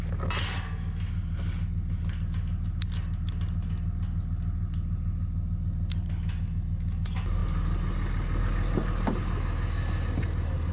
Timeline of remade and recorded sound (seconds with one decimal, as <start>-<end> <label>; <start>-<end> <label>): 0.0-10.7 recorded